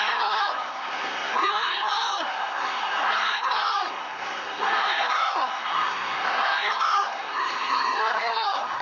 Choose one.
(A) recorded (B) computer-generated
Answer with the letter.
B